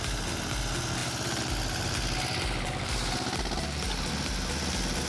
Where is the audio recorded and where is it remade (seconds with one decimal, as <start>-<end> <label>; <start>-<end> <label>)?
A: 0.0-5.1 recorded